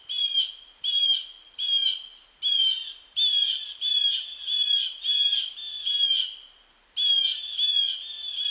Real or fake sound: real